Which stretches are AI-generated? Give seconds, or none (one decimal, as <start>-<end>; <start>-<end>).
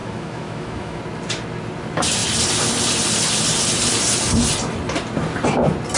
0.0-1.0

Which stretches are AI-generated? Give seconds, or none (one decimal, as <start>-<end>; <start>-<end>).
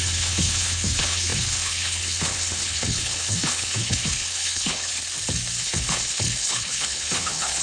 0.0-4.9; 5.6-7.6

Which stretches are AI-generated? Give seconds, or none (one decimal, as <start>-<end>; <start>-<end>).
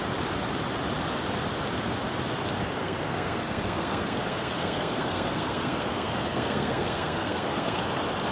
2.8-7.8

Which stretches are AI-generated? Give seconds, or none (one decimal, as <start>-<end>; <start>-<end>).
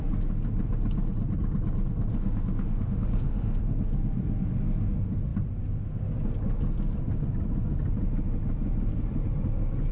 2.1-3.6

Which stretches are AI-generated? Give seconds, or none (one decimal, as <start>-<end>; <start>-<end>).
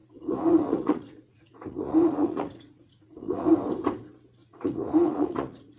0.0-3.5; 4.4-5.8